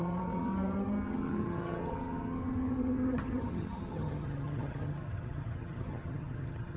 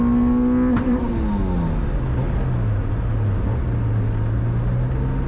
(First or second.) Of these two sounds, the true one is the second